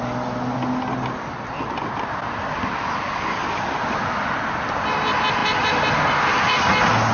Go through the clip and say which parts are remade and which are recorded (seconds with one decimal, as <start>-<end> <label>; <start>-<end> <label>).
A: 0.0-7.1 recorded